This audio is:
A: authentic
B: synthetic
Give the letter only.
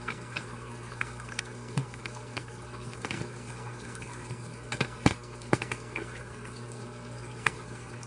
B